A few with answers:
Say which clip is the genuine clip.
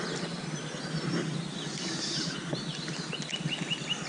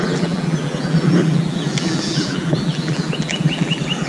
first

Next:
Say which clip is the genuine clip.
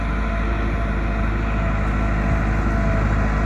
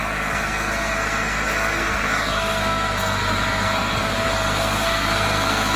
first